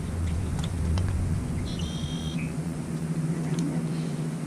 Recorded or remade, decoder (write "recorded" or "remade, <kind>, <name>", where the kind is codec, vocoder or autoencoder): remade, vocoder, Vocos